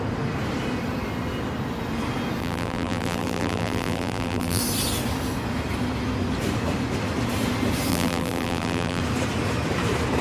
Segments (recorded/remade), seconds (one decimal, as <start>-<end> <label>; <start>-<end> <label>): 0.0-2.4 recorded; 2.4-4.6 remade; 4.6-7.9 recorded; 7.9-9.0 remade; 9.0-10.2 recorded

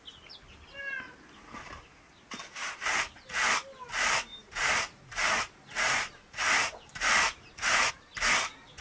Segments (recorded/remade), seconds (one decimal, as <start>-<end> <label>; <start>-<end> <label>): 0.0-2.6 recorded; 2.6-3.2 remade; 3.2-4.3 recorded; 4.3-7.9 remade; 7.9-8.8 recorded

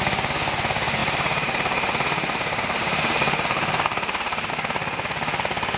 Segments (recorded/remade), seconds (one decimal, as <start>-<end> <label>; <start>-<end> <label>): 0.0-1.0 recorded; 1.0-4.5 remade; 4.5-5.8 recorded

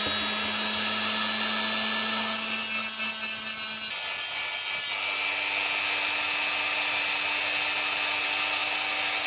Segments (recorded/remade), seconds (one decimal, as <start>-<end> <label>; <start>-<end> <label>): 0.0-9.3 recorded

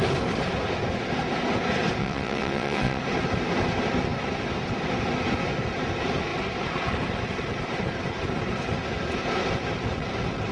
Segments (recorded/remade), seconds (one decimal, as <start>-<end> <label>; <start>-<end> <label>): 0.0-2.0 recorded; 2.0-3.0 remade; 3.0-10.5 recorded

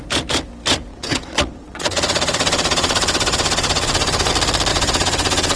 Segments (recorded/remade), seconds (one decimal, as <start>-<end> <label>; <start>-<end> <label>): 0.0-0.9 recorded; 0.9-4.3 remade; 4.3-4.7 recorded; 4.7-5.6 remade

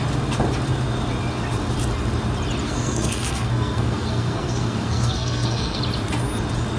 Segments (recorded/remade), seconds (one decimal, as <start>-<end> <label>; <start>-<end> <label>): 0.0-2.6 recorded; 2.6-5.8 remade; 5.8-6.8 recorded

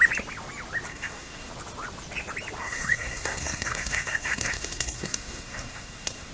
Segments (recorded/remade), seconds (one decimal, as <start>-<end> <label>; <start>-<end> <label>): 0.0-0.9 recorded; 0.9-1.5 remade; 1.5-2.6 recorded; 2.6-6.3 remade